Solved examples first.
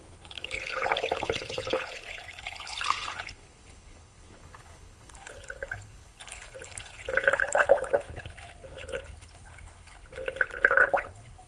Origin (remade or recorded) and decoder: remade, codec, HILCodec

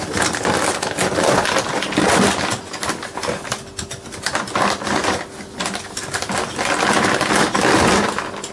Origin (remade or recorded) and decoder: recorded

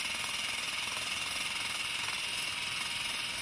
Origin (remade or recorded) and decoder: recorded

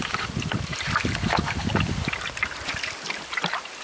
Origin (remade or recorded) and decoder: recorded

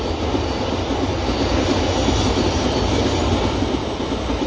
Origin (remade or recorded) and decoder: recorded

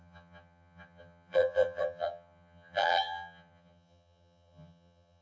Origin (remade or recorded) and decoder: remade, vocoder, HiFi-GAN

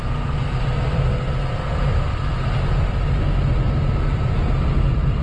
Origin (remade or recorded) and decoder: recorded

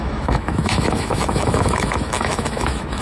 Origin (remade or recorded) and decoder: remade, autoencoder, DAC-VAE